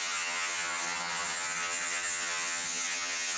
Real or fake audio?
fake